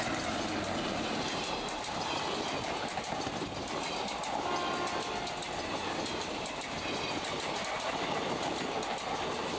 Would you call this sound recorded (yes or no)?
yes